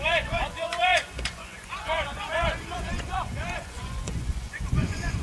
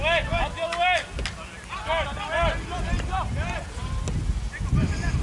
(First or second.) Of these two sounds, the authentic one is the second